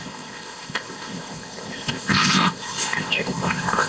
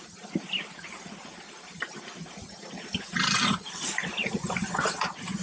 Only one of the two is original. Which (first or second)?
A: second